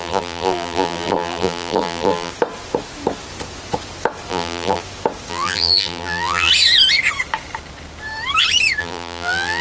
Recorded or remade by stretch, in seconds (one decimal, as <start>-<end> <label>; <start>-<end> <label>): 0.0-2.3 remade; 2.3-4.3 recorded; 4.3-4.8 remade; 4.8-5.3 recorded; 5.3-6.5 remade; 6.5-8.8 recorded; 8.8-9.6 remade